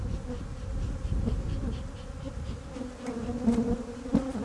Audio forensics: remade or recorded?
recorded